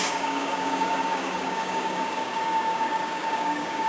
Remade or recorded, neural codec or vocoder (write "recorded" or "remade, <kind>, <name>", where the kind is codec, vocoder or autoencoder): remade, codec, DAC